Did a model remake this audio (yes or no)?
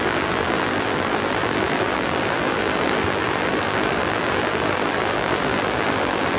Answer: yes